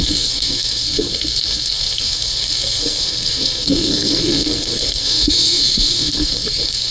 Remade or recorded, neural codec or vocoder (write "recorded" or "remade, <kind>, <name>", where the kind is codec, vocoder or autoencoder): remade, codec, SNAC